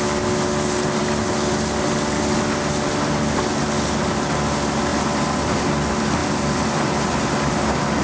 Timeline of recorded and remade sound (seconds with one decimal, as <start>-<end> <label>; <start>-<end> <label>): 0.0-4.9 recorded; 4.9-5.6 remade; 5.6-6.2 recorded; 6.2-8.0 remade